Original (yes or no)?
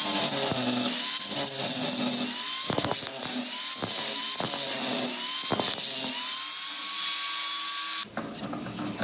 yes